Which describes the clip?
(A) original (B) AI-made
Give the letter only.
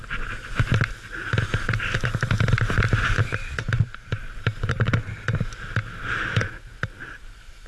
A